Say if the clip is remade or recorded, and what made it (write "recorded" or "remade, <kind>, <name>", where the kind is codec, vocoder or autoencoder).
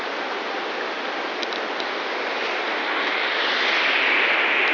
recorded